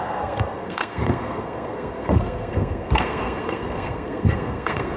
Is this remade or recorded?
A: remade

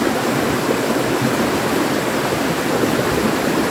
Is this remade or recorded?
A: recorded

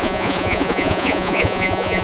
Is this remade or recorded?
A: remade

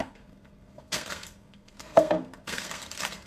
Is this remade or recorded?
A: remade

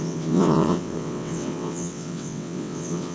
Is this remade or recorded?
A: remade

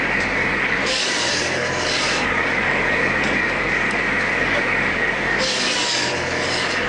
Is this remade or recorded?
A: remade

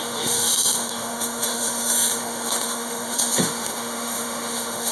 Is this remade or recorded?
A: remade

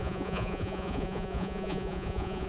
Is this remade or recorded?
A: remade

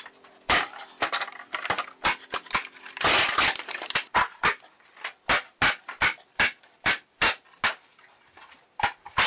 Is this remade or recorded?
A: recorded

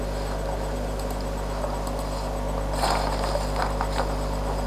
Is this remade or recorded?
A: recorded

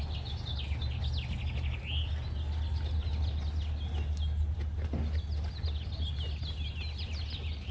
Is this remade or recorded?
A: recorded